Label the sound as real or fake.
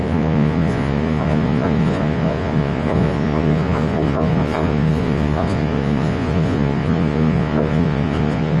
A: fake